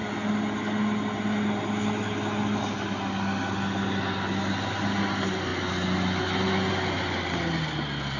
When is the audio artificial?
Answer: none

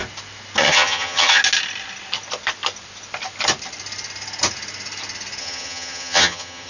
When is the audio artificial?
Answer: 0.6-1.4 (vocoder, HiFi-GAN); 5.4-6.7

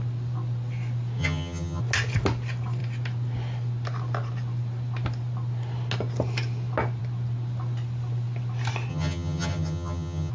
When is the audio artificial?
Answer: 1.2-1.8 (vocoder, HiFi-GAN); 8.9-10.3

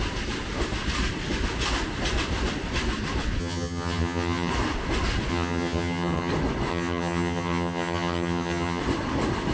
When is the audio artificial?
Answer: 3.4-4.5 (vocoder, HiFi-GAN); 5.3-6.3; 6.7-8.8

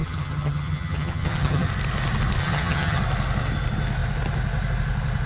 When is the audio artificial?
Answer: 0.0-1.7 (vocoder, HiFi-GAN); 2.4-3.0

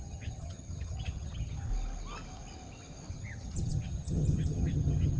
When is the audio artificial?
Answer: 0.0-1.7 (vocoder, HiFi-GAN); 3.1-5.2